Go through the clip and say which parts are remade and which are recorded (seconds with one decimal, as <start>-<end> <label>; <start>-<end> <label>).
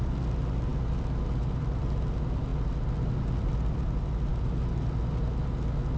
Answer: 0.0-6.0 recorded